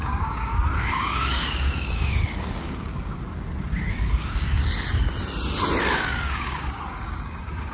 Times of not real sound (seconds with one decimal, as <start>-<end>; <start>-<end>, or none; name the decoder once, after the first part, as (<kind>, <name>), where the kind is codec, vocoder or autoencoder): 0.0-2.9 (codec, DAC); 3.9-4.6; 5.9-7.7